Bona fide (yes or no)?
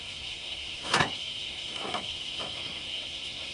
no